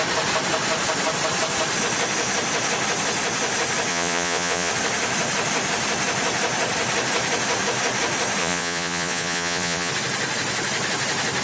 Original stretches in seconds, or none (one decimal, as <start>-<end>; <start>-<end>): 0.0-3.9; 4.7-8.4; 9.9-11.4